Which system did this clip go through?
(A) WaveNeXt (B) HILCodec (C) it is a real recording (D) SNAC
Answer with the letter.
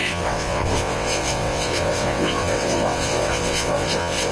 A